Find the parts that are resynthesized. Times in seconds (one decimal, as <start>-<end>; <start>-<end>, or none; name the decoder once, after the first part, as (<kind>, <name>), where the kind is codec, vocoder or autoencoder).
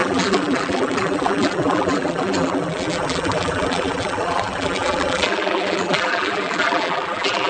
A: 0.0-7.5 (vocoder, BigVGAN v2)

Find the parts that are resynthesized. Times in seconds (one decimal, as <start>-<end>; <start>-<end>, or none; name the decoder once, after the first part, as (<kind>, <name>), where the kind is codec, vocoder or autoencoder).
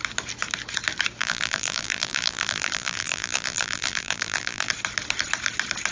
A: 1.2-4.7 (vocoder, BigVGAN v2)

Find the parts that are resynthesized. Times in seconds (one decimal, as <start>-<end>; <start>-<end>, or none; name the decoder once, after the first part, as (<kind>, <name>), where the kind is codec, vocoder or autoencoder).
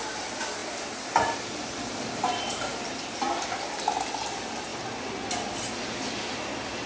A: 0.6-3.0 (vocoder, BigVGAN v2)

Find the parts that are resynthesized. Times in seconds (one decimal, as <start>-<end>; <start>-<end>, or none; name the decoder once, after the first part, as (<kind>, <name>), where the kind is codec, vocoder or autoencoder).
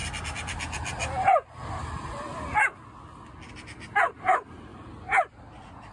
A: 3.5-5.9 (vocoder, BigVGAN v2)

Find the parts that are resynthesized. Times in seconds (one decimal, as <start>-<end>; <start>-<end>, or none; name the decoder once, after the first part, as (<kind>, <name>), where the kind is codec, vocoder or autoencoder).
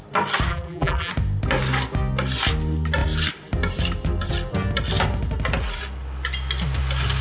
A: 0.5-1.1 (vocoder, BigVGAN v2)